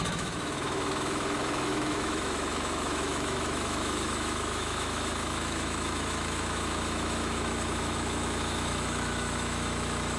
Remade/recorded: remade